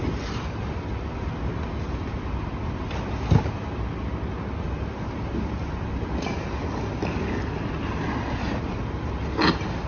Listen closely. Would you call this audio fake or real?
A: real